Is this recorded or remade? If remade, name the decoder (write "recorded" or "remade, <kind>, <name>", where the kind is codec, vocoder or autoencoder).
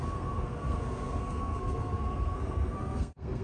remade, codec, SNAC